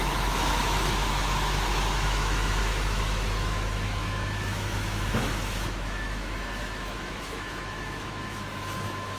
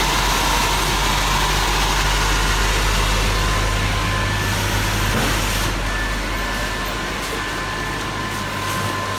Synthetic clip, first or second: first